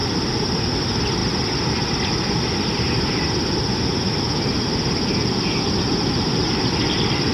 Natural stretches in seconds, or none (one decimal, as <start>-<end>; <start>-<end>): 0.0-7.3